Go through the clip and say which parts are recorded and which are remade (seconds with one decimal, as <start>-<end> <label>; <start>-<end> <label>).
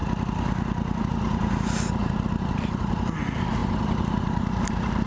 0.0-2.0 recorded; 2.0-2.9 remade; 2.9-3.6 recorded; 3.6-5.1 remade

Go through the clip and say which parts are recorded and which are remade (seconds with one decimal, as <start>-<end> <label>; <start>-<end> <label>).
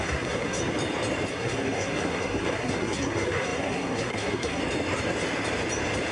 0.0-0.6 remade; 0.6-1.3 recorded; 1.3-4.6 remade; 4.6-6.1 recorded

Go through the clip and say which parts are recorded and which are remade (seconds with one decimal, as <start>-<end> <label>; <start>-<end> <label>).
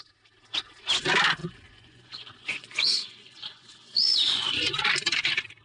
0.0-1.4 recorded; 1.4-4.8 remade; 4.8-5.6 recorded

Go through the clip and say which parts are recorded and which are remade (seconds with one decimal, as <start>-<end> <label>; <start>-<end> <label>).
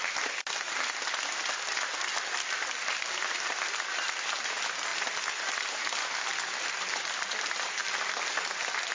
0.0-8.9 recorded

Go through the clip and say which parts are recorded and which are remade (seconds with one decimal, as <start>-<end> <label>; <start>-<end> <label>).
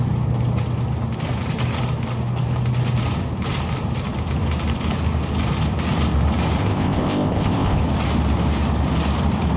0.0-6.6 recorded; 6.6-7.8 remade; 7.8-9.6 recorded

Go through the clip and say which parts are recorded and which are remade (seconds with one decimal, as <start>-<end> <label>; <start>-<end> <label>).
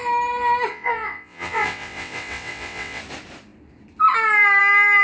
0.0-0.7 recorded; 0.7-3.0 remade; 3.0-5.0 recorded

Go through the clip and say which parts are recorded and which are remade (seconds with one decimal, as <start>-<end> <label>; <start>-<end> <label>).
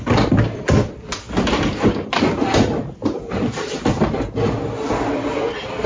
0.0-3.0 recorded; 3.0-3.8 remade; 3.8-5.9 recorded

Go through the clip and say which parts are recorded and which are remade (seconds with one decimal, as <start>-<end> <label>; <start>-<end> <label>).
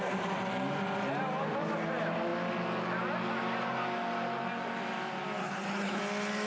0.0-5.4 recorded; 5.4-6.0 remade; 6.0-6.5 recorded